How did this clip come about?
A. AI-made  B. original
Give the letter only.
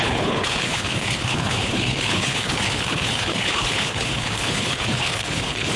A